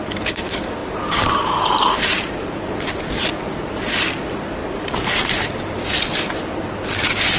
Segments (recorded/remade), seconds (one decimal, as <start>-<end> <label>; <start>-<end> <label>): 0.0-0.8 recorded; 0.8-3.0 remade; 3.0-4.6 recorded; 4.6-5.6 remade; 5.6-7.4 recorded